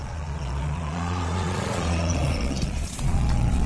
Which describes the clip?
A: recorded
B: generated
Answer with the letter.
B